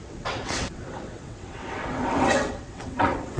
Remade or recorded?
remade